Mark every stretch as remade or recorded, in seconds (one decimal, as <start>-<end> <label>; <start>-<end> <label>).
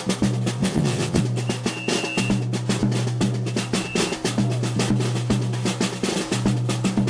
0.0-0.6 recorded; 0.6-1.2 remade; 1.2-7.1 recorded